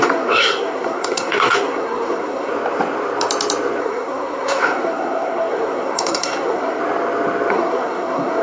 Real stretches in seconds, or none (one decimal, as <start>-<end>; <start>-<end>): 2.5-3.8; 6.8-7.5